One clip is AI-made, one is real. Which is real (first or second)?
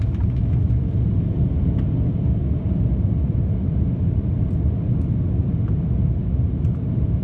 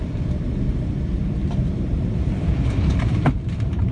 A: first